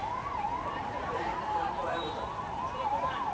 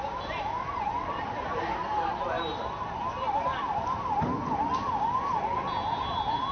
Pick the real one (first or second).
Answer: second